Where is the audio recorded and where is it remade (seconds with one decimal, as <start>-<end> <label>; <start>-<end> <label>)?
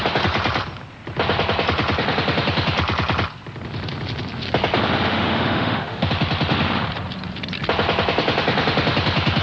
0.0-5.1 recorded; 5.1-6.1 remade; 6.1-9.4 recorded